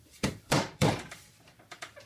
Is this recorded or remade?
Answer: remade